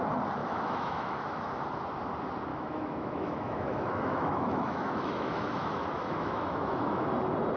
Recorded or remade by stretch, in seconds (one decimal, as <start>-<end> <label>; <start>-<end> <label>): 0.0-0.4 recorded; 0.4-1.4 remade; 1.4-2.5 recorded; 2.5-7.1 remade; 7.1-7.6 recorded